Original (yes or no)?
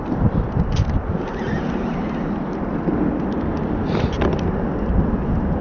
yes